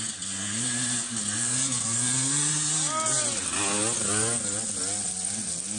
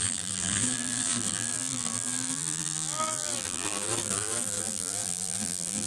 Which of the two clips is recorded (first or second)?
first